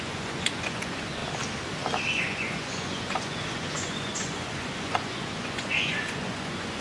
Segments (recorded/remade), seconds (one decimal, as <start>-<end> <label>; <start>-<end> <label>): 0.0-1.2 remade; 1.2-2.1 recorded; 2.1-6.8 remade